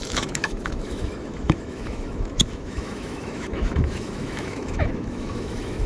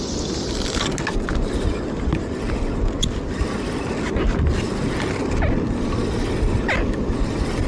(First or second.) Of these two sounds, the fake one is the first